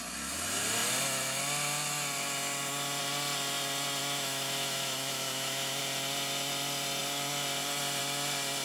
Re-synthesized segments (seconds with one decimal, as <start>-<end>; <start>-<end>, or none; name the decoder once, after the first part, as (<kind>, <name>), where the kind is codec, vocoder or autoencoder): 4.0-5.8 (autoencoder, DAC-VAE)